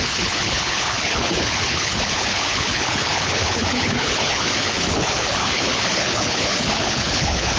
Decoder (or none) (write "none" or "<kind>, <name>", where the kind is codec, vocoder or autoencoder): codec, HILCodec